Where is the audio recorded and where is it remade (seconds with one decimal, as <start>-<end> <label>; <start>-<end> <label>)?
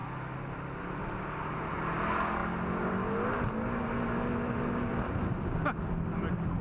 0.0-6.6 recorded